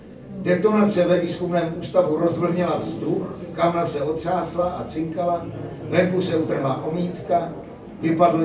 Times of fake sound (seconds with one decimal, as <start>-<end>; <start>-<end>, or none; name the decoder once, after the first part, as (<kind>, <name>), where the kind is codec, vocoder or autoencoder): 0.6-1.4 (vocoder, BigVGAN v2); 2.7-5.5